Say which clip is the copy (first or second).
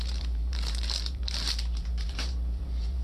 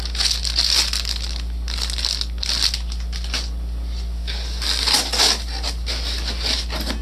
first